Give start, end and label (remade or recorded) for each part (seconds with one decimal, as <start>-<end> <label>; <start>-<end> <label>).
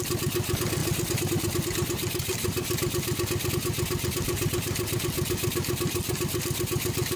0.0-7.2 recorded